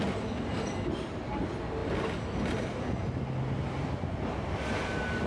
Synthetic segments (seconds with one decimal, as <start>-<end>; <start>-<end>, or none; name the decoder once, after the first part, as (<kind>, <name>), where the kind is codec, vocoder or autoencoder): none